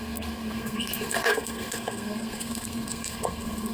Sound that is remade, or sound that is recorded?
remade